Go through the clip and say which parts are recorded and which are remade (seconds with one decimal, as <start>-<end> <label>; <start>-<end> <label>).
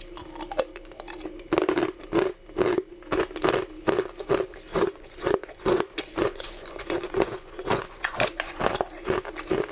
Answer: 0.0-4.7 recorded; 4.7-8.6 remade; 8.6-9.7 recorded